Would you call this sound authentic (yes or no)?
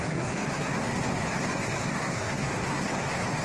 no